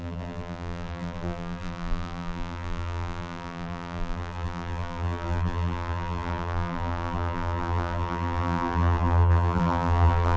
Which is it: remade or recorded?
remade